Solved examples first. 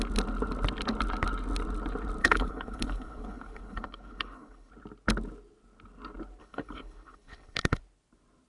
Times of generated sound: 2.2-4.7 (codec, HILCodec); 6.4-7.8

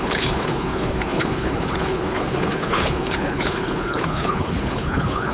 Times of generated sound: 0.0-5.3 (codec, HILCodec)

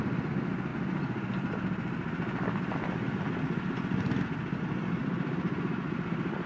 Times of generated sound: none

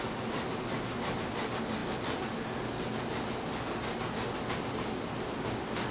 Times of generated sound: none

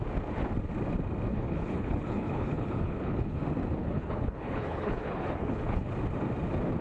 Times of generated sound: 1.3-3.4 (codec, HILCodec); 3.8-5.9

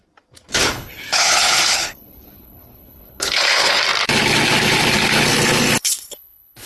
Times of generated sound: 0.6-3.8 (codec, HILCodec); 5.8-6.7

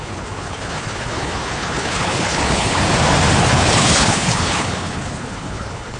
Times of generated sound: 0.0-2.8 (codec, HILCodec); 3.4-6.0

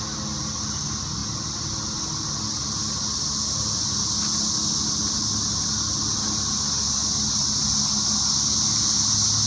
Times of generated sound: none